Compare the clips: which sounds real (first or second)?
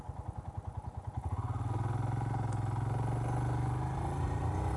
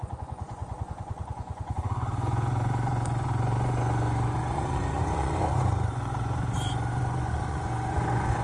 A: first